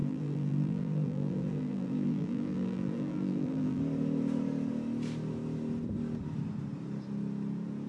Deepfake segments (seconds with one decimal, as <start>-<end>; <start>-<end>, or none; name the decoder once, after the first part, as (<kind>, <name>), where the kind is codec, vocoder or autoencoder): 0.0-3.8 (vocoder, BigVGAN v2)

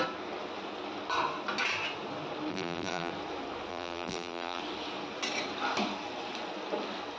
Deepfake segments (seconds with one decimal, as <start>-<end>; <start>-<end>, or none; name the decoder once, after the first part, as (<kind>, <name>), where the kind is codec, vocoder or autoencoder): 2.5-3.1 (vocoder, BigVGAN v2); 3.7-4.6

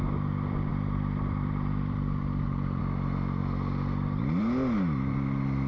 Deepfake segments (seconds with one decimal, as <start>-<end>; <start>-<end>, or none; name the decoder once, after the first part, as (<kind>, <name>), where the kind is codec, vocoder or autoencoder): 0.7-2.8 (vocoder, BigVGAN v2)

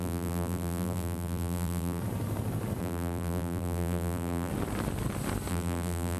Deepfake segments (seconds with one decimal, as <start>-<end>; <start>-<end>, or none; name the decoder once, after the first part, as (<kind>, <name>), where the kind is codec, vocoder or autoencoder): 0.0-2.0 (vocoder, BigVGAN v2); 2.8-4.5; 5.5-6.2